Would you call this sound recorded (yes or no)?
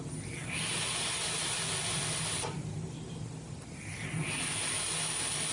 yes